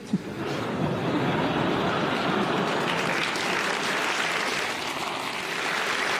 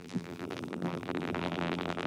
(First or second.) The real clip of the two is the first